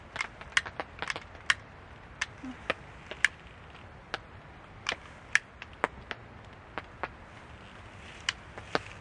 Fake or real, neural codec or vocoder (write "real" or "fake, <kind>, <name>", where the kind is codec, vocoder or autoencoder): real